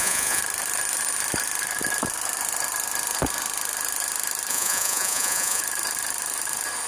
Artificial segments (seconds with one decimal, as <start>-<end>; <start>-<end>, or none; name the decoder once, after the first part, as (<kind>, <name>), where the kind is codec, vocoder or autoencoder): 0.0-0.4 (vocoder, Vocos); 4.5-5.6